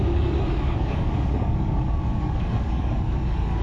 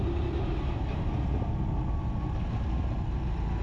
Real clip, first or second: second